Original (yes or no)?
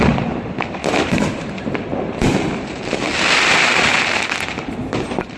no